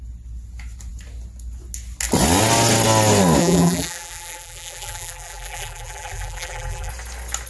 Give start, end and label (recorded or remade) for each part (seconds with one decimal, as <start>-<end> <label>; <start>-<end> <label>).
0.0-3.4 recorded; 3.4-6.9 remade; 6.9-7.5 recorded